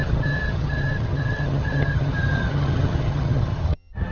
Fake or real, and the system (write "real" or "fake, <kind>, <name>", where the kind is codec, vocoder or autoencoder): fake, vocoder, HiFi-GAN